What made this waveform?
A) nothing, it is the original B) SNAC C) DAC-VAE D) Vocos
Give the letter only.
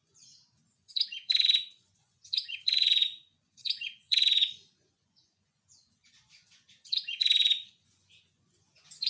D